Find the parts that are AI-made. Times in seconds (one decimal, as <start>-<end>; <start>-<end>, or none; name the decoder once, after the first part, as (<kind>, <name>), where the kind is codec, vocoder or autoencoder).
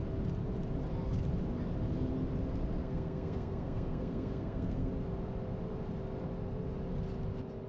2.8-4.9 (codec, SNAC)